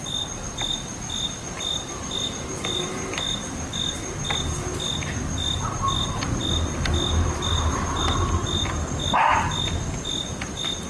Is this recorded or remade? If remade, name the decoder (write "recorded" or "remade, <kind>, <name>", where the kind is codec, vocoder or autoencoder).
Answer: recorded